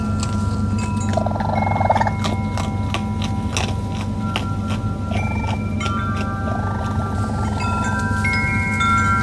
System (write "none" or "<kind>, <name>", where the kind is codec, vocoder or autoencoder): none